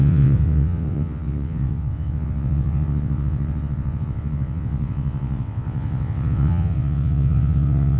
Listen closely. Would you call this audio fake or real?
fake